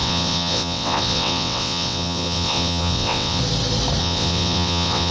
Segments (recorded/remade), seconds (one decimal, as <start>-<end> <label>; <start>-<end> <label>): 0.0-3.4 remade; 3.4-4.0 recorded; 4.0-5.1 remade